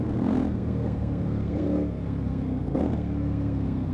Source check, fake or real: fake